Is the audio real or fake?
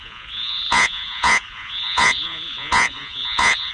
fake